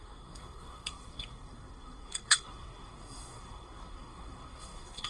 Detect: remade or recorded remade